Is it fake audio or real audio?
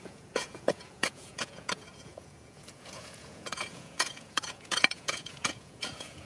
fake